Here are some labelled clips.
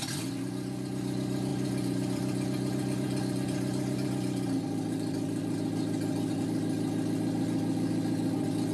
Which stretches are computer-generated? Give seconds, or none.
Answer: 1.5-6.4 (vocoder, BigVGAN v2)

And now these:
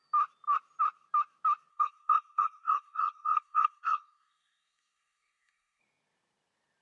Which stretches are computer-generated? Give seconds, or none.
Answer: 1.7-5.8 (codec, SNAC)

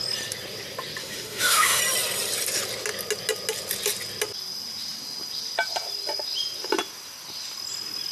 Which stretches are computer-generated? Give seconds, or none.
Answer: 1.0-1.8 (autoencoder, DAC-VAE)